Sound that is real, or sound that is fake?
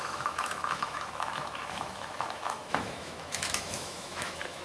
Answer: fake